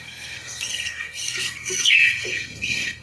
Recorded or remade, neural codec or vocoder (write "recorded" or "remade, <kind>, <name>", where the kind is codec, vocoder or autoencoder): remade, codec, SNAC